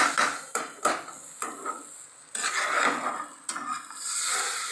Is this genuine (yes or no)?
yes